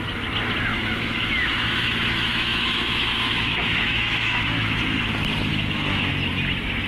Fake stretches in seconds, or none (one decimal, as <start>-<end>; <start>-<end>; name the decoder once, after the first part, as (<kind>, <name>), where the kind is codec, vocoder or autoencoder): 0.7-4.8 (autoencoder, DAC-VAE); 5.5-6.1

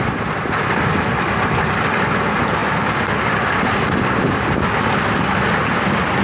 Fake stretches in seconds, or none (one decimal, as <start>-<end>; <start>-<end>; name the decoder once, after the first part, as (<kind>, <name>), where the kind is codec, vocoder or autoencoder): none

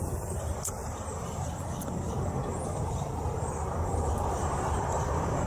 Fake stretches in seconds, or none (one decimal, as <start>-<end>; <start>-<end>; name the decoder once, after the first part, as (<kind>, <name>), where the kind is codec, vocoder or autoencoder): 0.0-5.5 (vocoder, BigVGAN v2)

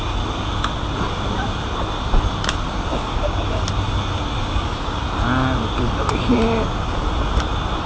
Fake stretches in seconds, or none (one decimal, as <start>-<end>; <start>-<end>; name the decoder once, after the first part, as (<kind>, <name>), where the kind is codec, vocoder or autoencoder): 2.9-3.6 (codec, DAC); 4.4-5.0

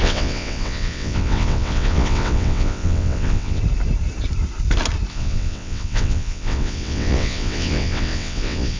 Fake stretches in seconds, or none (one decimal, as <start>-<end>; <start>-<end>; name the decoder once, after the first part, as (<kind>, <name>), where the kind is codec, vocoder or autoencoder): 0.0-3.6 (vocoder, WaveNeXt); 5.1-8.8

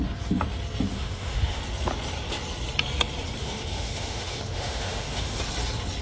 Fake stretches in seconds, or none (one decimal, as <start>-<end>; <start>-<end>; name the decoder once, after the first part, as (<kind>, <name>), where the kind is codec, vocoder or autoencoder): 0.9-1.6 (autoencoder, DAC-VAE); 3.4-5.4

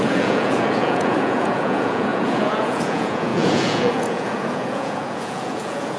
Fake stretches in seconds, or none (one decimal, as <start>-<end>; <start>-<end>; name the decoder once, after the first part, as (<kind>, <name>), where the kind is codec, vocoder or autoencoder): 0.0-6.0 (vocoder, Vocos)